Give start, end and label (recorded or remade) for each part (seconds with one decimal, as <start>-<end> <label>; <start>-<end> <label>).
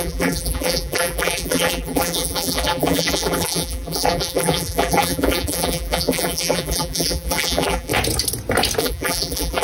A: 0.0-7.9 remade; 7.9-8.8 recorded; 8.8-9.6 remade